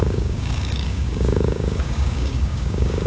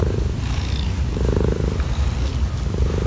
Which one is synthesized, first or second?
first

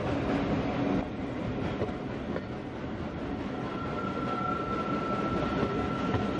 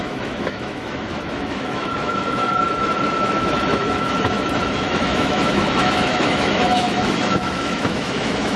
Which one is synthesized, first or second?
second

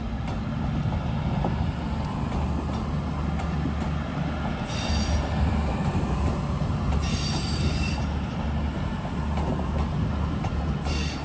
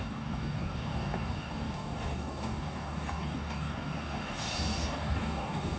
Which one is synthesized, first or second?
second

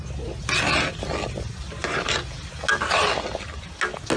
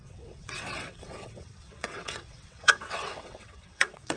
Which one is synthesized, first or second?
second